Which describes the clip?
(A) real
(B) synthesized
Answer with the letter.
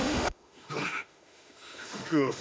B